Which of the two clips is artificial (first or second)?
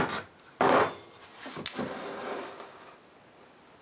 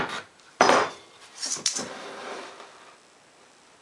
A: second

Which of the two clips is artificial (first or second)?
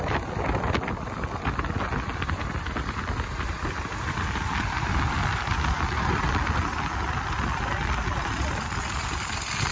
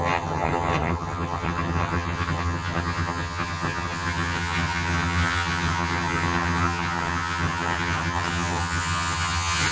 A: second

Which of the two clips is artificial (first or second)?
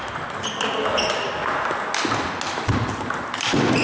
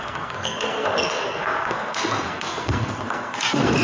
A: second